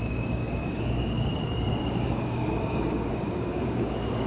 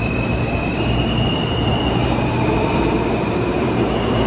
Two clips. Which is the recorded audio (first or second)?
second